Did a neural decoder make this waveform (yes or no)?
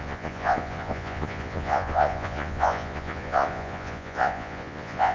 yes